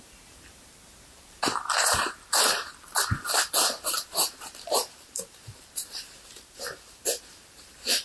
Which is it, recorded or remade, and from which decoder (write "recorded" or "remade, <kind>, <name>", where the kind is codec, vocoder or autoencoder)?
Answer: remade, vocoder, BigVGAN v2